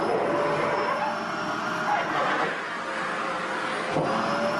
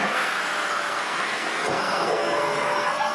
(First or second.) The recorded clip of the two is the first